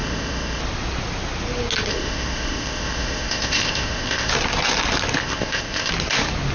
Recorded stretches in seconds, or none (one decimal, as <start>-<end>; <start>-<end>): 0.6-1.9; 4.3-5.2; 5.9-6.5